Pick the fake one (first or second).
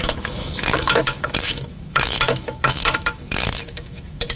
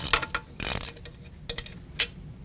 first